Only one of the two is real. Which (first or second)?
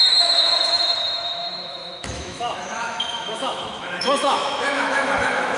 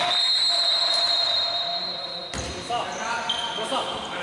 second